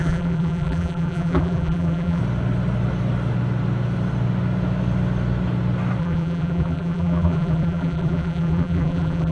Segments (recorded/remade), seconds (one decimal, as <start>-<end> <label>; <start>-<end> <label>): 0.0-2.2 remade; 2.2-6.0 recorded; 6.0-9.3 remade